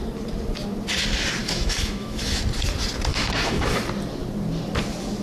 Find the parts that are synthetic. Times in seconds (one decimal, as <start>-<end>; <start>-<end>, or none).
1.4-2.4; 3.1-3.8

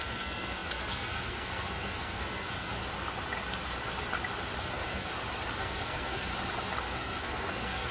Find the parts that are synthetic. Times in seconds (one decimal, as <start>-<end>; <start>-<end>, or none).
0.0-2.8; 4.6-5.1; 5.6-6.3; 6.8-7.9

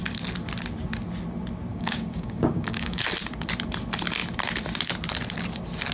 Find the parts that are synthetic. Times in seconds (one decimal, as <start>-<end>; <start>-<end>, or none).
1.7-3.0

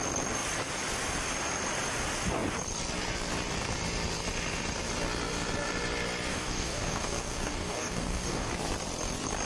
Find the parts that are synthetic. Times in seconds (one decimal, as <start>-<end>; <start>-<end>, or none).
6.3-8.5

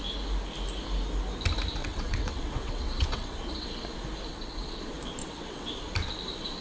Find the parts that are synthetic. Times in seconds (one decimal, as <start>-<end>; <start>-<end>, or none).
1.8-3.8; 4.3-4.8; 5.2-5.7